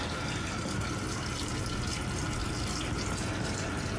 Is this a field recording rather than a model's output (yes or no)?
yes